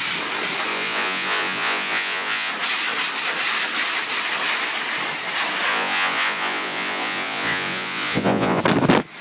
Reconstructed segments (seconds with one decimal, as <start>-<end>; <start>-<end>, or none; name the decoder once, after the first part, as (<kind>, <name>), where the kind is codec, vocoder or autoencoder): 0.7-2.5 (vocoder, Vocos); 5.7-8.6